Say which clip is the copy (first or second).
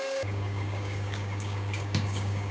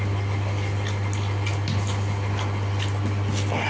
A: first